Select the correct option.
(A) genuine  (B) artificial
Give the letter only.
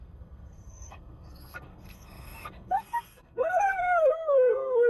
B